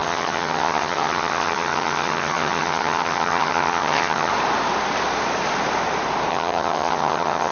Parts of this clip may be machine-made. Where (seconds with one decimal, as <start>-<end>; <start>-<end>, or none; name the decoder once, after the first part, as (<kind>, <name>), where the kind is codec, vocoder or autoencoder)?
0.0-4.3 (vocoder, HiFi-GAN); 6.3-7.5